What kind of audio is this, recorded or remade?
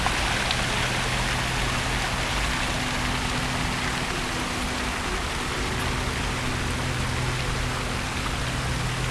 recorded